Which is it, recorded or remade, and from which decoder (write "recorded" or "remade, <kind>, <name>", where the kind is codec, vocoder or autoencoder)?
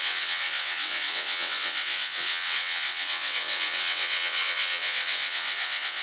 remade, vocoder, WaveNeXt